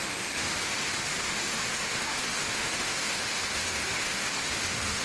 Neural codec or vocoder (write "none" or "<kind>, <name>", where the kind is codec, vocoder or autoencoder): autoencoder, DAC-VAE